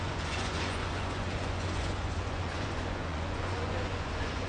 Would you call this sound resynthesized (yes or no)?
yes